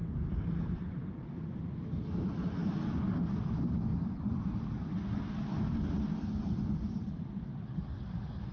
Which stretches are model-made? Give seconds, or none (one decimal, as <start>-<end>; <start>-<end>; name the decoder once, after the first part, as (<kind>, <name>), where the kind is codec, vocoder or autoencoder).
none